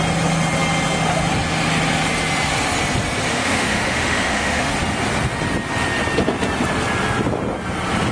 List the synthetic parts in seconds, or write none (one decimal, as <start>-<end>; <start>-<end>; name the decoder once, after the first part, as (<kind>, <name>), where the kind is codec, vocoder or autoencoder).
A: 3.3-4.7 (autoencoder, DAC-VAE)